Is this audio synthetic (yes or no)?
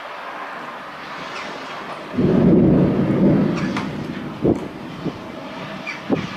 no